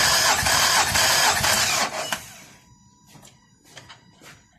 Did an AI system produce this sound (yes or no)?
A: yes